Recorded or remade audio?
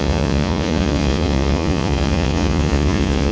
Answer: remade